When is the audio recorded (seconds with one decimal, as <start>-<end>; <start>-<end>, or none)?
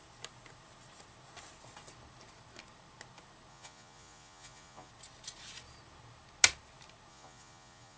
0.0-3.5; 4.9-7.1